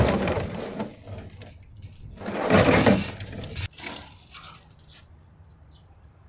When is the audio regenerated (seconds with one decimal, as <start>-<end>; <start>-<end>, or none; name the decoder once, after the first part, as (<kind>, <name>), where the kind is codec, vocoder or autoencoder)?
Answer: 0.0-0.9 (vocoder, BigVGAN v2); 2.1-6.3